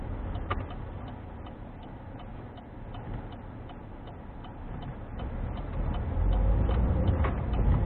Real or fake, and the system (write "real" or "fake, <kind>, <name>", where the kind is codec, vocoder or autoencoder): real